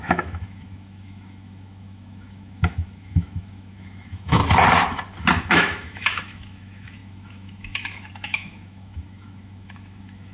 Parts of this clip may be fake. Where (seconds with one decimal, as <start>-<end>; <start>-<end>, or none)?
0.0-4.4; 5.4-10.3